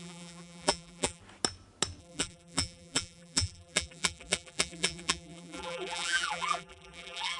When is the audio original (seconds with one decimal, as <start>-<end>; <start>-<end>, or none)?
1.2-2.0